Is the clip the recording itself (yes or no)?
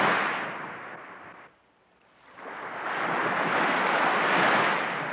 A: yes